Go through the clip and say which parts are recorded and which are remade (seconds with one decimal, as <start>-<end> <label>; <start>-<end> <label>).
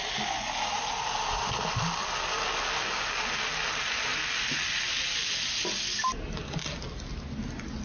0.0-7.8 recorded